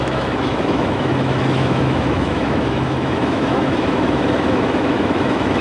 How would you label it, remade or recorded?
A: remade